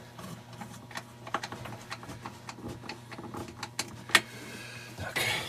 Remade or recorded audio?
recorded